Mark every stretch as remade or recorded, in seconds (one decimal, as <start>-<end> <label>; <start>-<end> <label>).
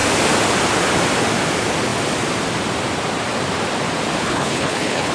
0.0-4.2 recorded; 4.2-5.1 remade